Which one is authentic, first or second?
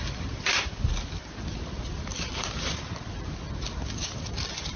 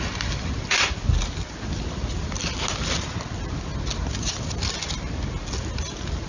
second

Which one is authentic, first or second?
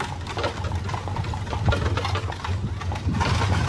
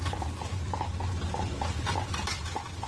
second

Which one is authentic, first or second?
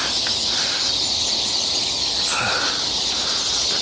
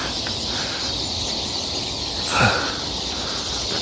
first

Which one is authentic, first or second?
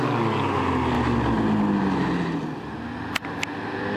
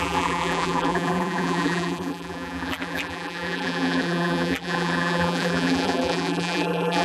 first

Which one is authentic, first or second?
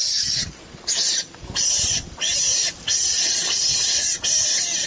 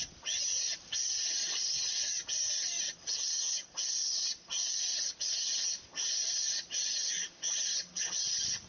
first